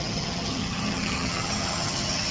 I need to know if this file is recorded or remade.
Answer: remade